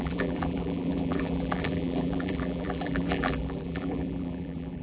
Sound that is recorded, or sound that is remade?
remade